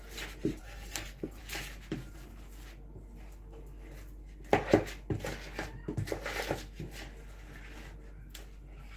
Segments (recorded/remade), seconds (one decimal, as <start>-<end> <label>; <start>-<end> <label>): 0.0-0.6 recorded; 0.6-1.4 remade; 1.4-9.0 recorded